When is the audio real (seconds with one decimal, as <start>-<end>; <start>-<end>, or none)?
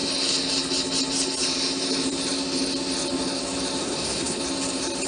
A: 0.0-3.8; 4.4-5.1